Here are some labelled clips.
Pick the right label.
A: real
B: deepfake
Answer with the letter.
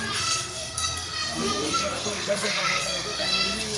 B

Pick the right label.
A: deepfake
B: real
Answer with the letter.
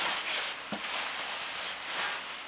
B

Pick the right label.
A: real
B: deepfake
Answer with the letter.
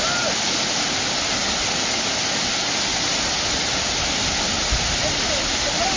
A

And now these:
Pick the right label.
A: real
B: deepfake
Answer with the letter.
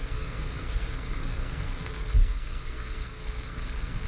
B